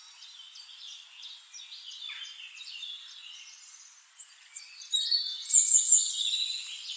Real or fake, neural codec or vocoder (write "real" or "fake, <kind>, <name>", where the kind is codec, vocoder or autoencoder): real